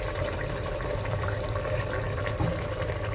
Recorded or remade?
recorded